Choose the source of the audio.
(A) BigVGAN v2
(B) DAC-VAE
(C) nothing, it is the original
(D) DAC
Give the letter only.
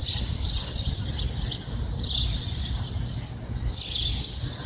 C